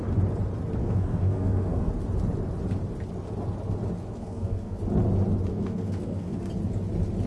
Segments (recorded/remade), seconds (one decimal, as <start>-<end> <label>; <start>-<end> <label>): 0.0-0.8 recorded; 0.8-1.9 remade; 1.9-4.2 recorded; 4.2-4.8 remade; 4.8-5.5 recorded; 5.5-6.5 remade; 6.5-7.3 recorded